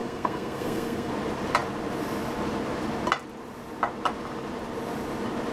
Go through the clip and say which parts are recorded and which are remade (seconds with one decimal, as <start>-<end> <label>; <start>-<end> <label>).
0.0-1.1 remade; 1.1-5.5 recorded